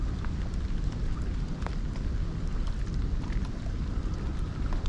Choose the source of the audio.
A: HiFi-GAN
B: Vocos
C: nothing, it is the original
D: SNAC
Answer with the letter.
C